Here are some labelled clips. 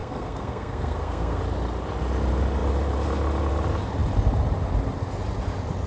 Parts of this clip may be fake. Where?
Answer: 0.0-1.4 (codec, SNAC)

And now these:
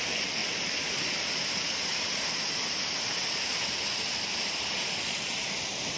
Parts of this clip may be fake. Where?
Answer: none

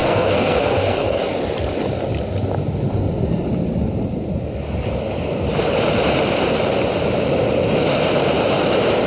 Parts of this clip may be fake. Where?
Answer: 0.0-1.2 (codec, SNAC)